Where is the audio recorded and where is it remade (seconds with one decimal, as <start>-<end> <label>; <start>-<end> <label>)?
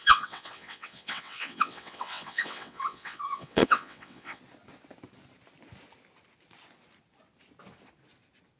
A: 0.0-4.4 remade; 4.4-8.6 recorded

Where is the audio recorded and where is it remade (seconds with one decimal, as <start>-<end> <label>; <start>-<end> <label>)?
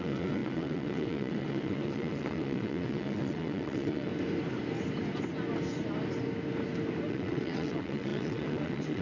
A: 0.0-4.1 remade; 4.1-7.1 recorded; 7.1-9.0 remade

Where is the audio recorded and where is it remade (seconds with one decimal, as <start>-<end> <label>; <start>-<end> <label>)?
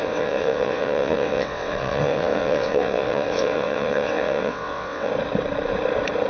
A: 0.0-5.1 remade; 5.1-6.3 recorded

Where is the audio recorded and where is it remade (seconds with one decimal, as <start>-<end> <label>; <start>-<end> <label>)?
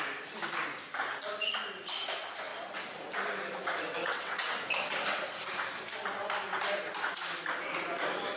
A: 0.0-4.0 recorded; 4.0-4.6 remade; 4.6-8.4 recorded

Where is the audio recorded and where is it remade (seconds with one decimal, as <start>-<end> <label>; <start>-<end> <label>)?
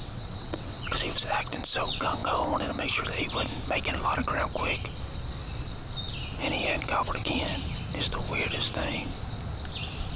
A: 0.0-2.2 remade; 2.2-7.1 recorded; 7.1-7.5 remade; 7.5-10.2 recorded